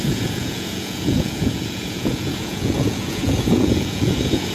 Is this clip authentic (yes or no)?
no